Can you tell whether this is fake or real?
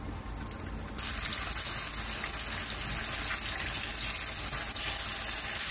real